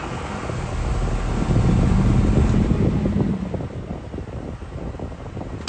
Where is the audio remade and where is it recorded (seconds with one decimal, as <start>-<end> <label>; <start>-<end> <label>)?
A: 0.0-5.7 recorded

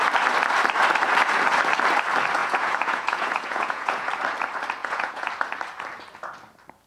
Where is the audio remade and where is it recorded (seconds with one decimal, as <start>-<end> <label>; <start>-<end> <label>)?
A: 0.0-2.4 recorded; 2.4-4.1 remade; 4.1-4.8 recorded; 4.8-5.3 remade; 5.3-6.9 recorded

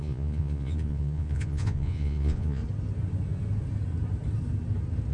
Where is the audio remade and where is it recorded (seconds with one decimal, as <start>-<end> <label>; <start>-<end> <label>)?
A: 0.0-2.6 remade; 2.6-5.1 recorded

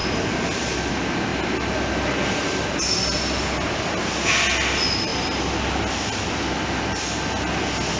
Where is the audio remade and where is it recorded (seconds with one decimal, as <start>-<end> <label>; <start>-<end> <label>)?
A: 0.0-8.0 recorded